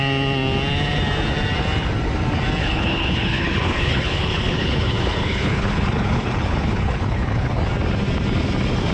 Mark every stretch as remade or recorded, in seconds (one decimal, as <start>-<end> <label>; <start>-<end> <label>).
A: 0.0-2.6 recorded; 2.6-7.6 remade; 7.6-8.9 recorded